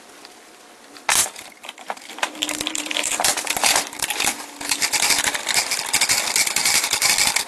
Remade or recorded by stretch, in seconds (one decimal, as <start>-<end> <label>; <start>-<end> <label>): 0.0-1.2 recorded; 1.2-2.1 remade; 2.1-2.7 recorded; 2.7-4.1 remade; 4.1-6.4 recorded; 6.4-7.1 remade; 7.1-7.5 recorded

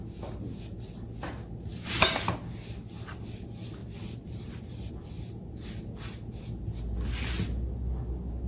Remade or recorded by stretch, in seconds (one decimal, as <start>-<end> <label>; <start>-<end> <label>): 0.0-3.8 recorded; 3.8-4.9 remade; 4.9-8.5 recorded